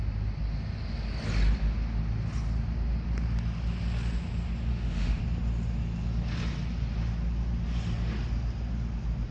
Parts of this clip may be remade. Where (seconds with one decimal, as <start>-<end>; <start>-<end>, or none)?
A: 4.7-5.2